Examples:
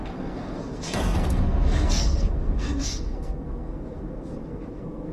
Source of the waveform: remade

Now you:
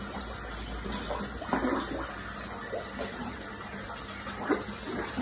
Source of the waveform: recorded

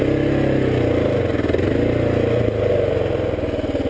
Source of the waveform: recorded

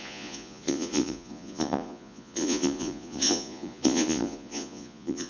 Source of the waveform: remade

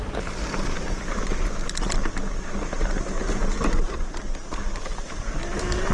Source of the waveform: recorded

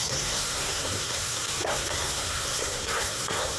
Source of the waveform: remade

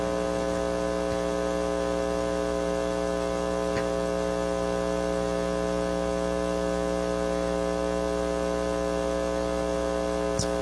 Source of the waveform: recorded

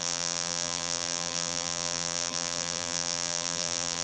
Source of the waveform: remade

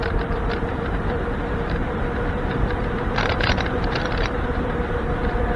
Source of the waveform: remade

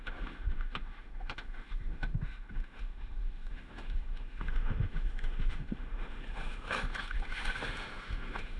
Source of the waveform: remade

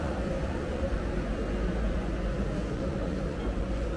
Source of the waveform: remade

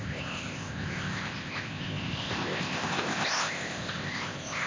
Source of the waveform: remade